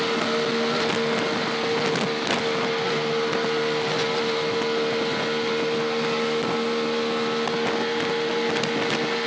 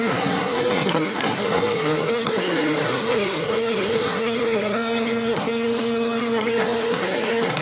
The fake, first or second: second